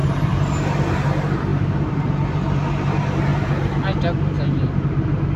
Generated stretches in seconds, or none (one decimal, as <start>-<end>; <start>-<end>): 0.0-0.8